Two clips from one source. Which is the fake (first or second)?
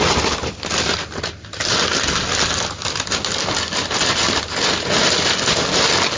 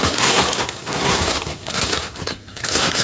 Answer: second